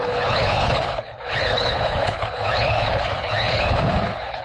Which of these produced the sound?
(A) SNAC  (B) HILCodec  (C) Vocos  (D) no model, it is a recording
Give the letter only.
B